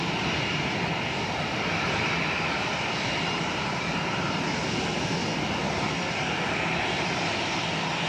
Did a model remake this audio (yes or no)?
yes